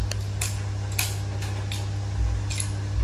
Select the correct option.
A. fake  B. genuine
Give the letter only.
B